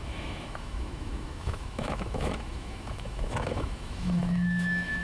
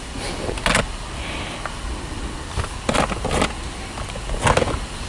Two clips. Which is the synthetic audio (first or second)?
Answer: first